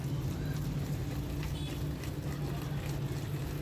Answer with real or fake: real